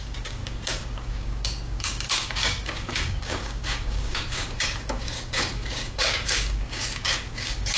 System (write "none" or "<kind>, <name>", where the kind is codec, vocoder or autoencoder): codec, DAC